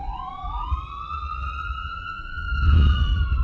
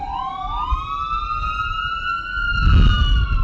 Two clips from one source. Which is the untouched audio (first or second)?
second